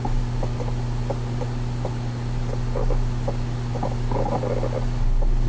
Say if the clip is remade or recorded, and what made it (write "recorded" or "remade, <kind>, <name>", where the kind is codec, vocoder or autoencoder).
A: recorded